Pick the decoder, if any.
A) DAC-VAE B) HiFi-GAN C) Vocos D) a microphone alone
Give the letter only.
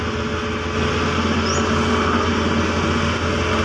D